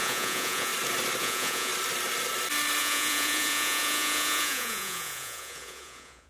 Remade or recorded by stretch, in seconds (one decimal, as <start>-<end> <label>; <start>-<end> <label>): 0.0-0.7 remade; 0.7-1.2 recorded; 1.2-1.7 remade; 1.7-2.8 recorded; 2.8-6.3 remade